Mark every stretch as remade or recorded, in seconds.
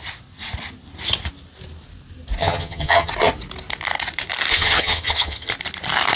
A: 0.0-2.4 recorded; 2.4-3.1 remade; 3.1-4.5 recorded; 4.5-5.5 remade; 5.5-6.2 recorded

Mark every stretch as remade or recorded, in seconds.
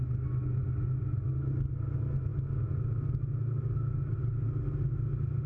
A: 0.0-5.5 recorded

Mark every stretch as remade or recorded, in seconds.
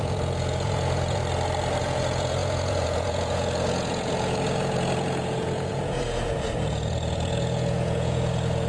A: 0.0-1.2 remade; 1.2-1.8 recorded; 1.8-8.7 remade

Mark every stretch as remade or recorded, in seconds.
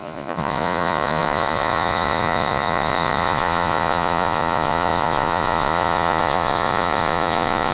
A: 0.0-7.7 remade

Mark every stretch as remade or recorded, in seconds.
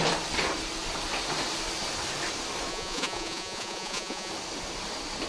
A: 0.0-2.7 recorded; 2.7-4.3 remade; 4.3-5.3 recorded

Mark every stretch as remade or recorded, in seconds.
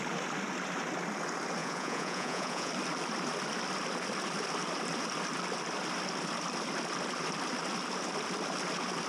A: 0.0-1.6 recorded; 1.6-2.7 remade; 2.7-9.1 recorded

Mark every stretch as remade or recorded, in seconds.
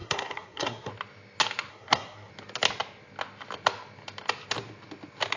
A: 0.0-0.9 remade; 0.9-1.7 recorded; 1.7-2.3 remade; 2.3-5.4 recorded